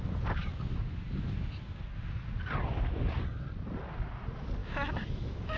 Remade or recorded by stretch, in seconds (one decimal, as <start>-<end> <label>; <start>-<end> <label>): 0.0-4.6 recorded; 4.6-5.6 remade